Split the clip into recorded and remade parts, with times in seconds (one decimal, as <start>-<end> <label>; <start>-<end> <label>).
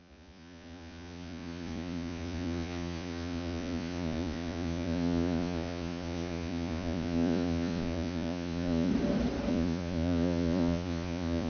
0.0-8.9 remade; 8.9-9.5 recorded; 9.5-11.5 remade